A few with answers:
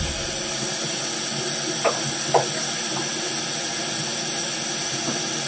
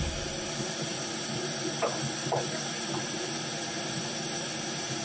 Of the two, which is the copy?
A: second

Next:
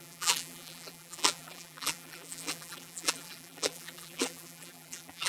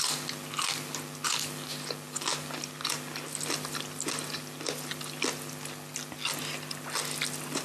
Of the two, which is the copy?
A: first